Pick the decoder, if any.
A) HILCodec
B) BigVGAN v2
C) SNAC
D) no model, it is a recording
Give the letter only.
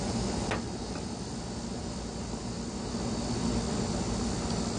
D